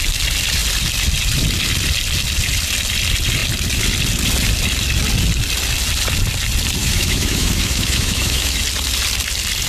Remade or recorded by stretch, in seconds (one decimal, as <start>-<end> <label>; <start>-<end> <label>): 0.0-6.8 recorded; 6.8-8.6 remade; 8.6-9.7 recorded

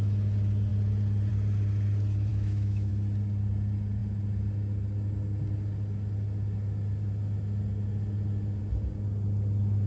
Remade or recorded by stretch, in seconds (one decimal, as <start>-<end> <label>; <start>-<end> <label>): 0.0-2.3 recorded; 2.3-2.9 remade; 2.9-9.9 recorded

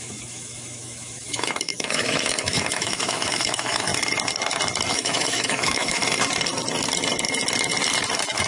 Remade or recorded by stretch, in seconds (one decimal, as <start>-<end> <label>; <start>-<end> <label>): 0.0-3.9 remade; 3.9-4.9 recorded; 4.9-6.0 remade; 6.0-8.5 recorded

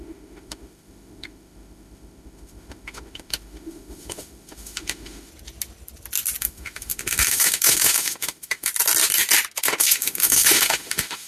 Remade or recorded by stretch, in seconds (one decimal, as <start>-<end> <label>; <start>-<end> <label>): 0.0-5.3 remade; 5.3-6.4 recorded; 6.4-8.7 remade; 8.7-9.6 recorded; 9.6-11.3 remade

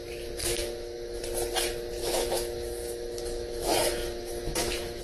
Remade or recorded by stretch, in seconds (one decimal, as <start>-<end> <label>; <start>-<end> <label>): 0.0-0.4 recorded; 0.4-1.2 remade; 1.2-2.0 recorded; 2.0-5.0 remade